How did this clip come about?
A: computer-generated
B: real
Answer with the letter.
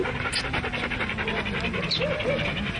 B